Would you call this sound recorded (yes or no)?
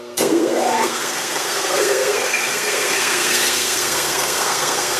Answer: no